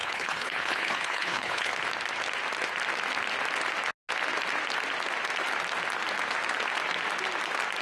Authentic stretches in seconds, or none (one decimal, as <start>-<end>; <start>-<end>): 1.7-7.8